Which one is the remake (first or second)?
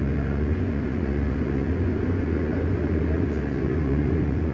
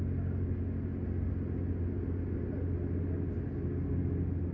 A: first